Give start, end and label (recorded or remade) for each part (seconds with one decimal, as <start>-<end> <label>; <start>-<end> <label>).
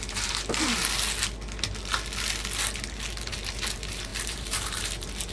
0.0-0.8 remade; 0.8-3.3 recorded; 3.3-5.3 remade